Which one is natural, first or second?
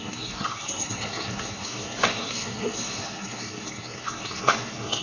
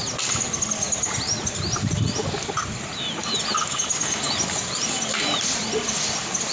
second